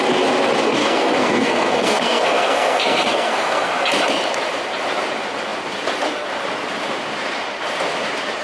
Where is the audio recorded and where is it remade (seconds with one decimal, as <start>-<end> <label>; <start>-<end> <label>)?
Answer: 0.0-0.8 recorded; 0.8-3.7 remade; 3.7-8.4 recorded